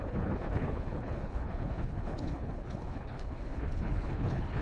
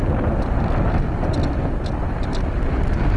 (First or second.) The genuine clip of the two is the second